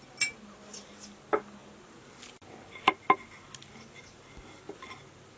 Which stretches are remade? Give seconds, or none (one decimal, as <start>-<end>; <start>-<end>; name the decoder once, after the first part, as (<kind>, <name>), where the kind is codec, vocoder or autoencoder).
none